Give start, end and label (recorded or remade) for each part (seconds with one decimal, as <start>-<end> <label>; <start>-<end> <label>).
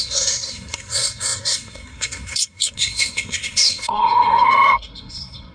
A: 0.0-5.5 remade